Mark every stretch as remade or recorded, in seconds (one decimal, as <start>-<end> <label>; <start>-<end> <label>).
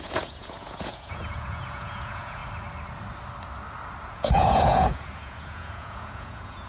0.0-2.4 remade; 2.4-4.1 recorded; 4.1-6.7 remade